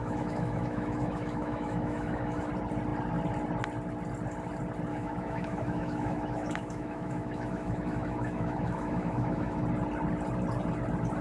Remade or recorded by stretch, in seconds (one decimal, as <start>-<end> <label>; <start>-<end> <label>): 0.0-2.5 remade; 2.5-4.9 recorded; 4.9-9.6 remade; 9.6-11.2 recorded